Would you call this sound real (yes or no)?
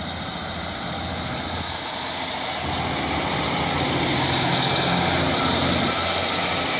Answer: yes